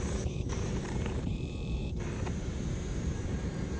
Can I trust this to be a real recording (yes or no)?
no